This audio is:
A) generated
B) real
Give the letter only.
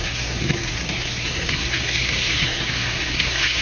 A